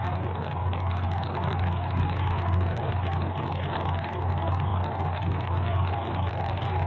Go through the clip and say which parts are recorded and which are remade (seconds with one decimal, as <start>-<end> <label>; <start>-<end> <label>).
0.0-6.9 remade